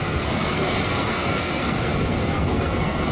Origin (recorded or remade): remade